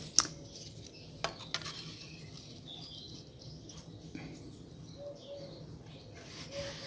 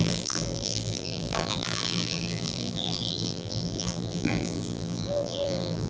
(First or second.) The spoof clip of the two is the second